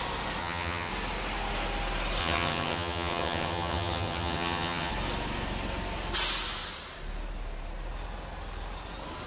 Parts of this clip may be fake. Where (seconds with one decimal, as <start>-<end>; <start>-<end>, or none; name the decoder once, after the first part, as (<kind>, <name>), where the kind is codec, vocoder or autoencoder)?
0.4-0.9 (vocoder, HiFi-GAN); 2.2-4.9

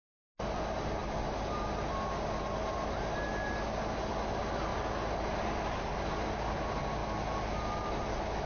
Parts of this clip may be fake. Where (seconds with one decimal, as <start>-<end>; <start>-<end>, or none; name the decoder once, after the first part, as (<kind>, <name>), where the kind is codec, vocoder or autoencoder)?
none

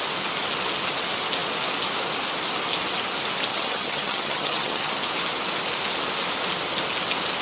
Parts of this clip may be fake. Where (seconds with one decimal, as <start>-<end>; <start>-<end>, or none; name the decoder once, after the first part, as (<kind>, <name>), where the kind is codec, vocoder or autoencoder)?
3.5-4.9 (vocoder, HiFi-GAN)